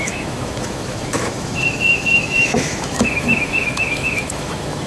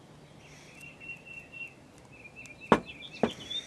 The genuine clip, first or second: second